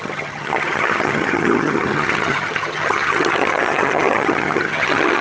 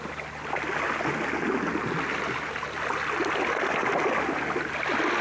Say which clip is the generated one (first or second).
first